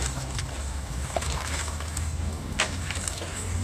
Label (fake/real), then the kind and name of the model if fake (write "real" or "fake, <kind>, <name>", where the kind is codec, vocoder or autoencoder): fake, codec, DAC